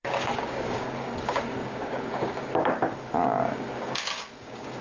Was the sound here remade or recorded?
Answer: remade